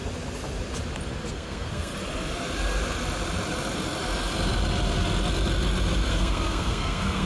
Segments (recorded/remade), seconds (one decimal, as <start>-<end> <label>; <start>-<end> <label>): 0.0-1.3 recorded; 1.3-1.9 remade; 1.9-6.1 recorded; 6.1-7.3 remade